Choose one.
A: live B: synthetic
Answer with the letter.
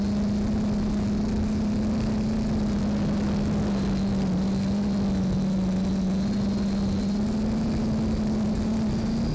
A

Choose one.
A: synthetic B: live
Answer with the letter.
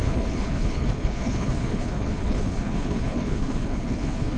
A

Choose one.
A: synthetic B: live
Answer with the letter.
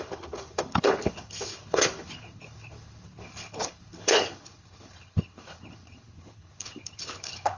A